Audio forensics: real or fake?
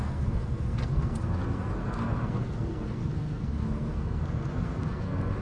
fake